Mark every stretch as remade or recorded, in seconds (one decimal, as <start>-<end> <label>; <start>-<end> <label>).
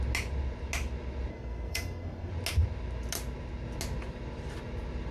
0.0-1.3 recorded; 1.3-2.3 remade; 2.3-5.1 recorded